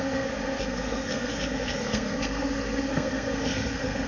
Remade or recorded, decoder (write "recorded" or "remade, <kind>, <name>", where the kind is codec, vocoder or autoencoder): remade, codec, SNAC